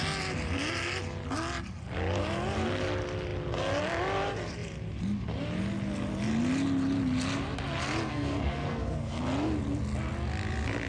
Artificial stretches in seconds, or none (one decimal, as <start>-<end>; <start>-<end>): 8.1-9.2